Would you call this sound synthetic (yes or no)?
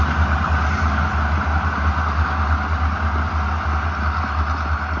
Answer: no